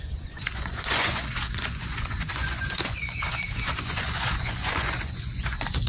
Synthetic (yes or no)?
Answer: yes